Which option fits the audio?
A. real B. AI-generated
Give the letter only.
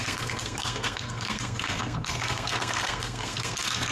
B